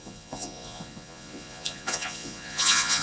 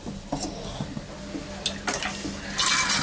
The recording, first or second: second